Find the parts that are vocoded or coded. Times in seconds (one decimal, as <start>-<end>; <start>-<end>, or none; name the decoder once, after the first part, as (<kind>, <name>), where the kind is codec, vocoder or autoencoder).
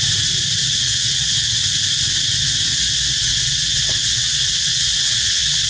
0.6-1.6 (vocoder, WaveNeXt); 2.7-5.7